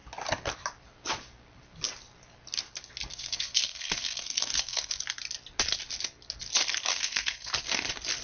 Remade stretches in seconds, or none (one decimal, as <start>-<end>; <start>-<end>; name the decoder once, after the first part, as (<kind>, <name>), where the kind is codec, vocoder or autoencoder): 3.1-4.9 (codec, SNAC); 6.9-7.5